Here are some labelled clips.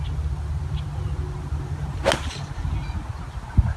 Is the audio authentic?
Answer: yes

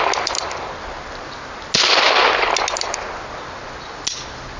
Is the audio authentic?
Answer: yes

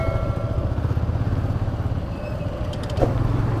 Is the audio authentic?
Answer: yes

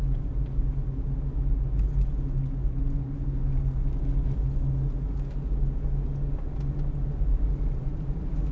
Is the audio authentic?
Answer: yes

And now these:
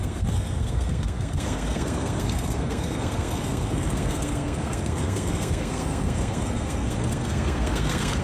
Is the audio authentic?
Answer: no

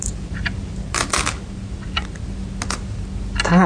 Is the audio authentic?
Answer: yes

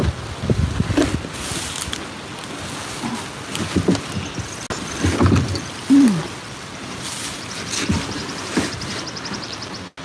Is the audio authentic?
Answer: yes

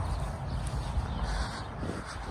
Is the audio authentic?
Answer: yes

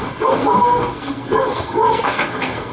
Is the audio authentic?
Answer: no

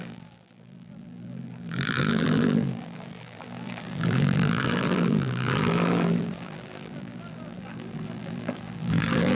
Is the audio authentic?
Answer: no